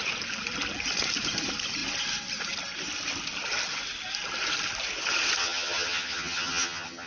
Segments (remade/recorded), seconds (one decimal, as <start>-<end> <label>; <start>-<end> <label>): 0.0-5.4 recorded; 5.4-7.1 remade

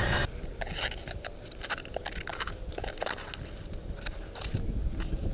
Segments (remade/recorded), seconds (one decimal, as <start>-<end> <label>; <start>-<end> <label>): 0.0-5.3 recorded